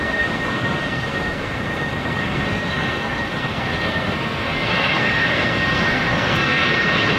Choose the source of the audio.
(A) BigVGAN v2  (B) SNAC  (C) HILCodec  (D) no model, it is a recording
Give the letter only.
B